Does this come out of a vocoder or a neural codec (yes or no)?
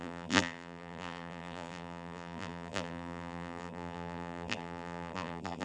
yes